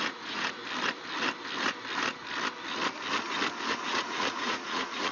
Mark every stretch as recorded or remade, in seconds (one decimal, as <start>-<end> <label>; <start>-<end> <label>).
0.0-0.6 remade; 0.6-3.7 recorded; 3.7-5.1 remade